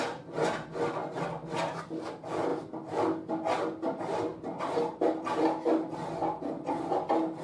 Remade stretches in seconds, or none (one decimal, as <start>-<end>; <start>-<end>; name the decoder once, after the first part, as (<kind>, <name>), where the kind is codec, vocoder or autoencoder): none